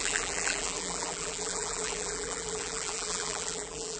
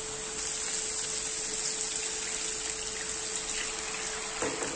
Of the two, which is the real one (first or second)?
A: second